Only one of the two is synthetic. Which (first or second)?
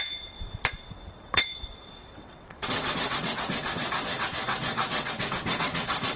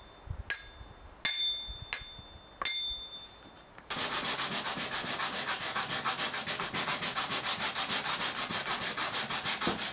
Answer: first